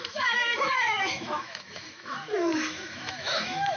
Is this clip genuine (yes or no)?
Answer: no